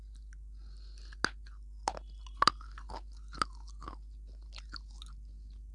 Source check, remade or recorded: recorded